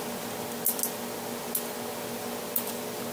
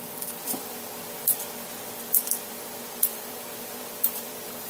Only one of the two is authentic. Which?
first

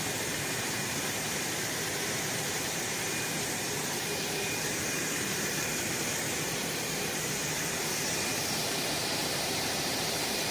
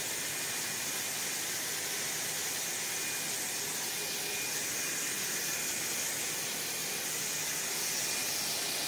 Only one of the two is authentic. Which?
second